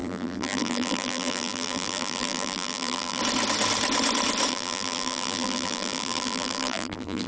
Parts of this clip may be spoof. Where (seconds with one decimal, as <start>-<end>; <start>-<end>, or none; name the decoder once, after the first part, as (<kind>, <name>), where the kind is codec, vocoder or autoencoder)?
0.0-3.2 (vocoder, BigVGAN v2); 4.5-7.3